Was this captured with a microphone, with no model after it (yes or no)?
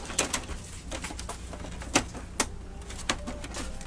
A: yes